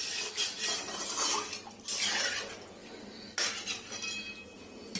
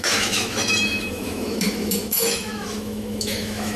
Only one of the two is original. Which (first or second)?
first